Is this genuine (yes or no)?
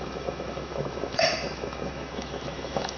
no